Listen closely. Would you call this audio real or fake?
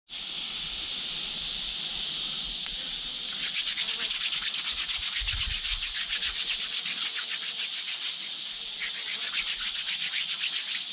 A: real